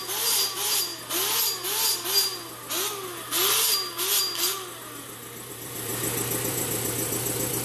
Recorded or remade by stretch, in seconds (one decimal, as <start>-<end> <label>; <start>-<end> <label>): 0.0-0.9 remade; 0.9-5.5 recorded; 5.5-5.9 remade; 5.9-6.5 recorded; 6.5-7.6 remade